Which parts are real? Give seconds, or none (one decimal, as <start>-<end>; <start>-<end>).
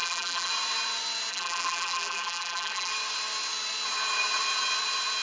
0.5-1.3; 2.9-5.2